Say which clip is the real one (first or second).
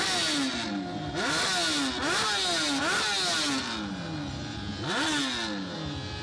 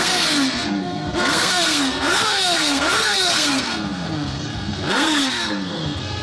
first